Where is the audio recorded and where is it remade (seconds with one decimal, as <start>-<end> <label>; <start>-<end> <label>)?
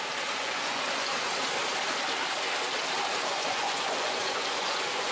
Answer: 0.0-0.4 recorded; 0.4-1.3 remade; 1.3-3.2 recorded; 3.2-5.1 remade